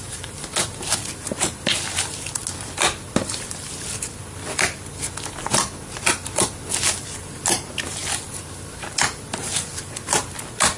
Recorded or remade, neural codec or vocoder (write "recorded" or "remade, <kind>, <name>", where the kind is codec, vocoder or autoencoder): recorded